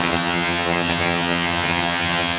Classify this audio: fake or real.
fake